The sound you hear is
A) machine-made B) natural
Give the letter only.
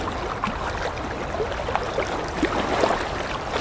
B